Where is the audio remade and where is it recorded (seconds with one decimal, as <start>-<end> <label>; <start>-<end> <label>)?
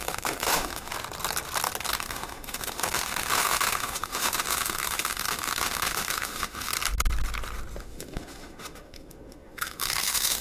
0.0-0.9 remade; 0.9-1.8 recorded; 1.8-6.7 remade; 6.7-7.8 recorded; 7.8-10.4 remade